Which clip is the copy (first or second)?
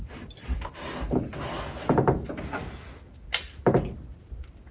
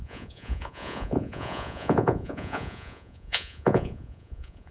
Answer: second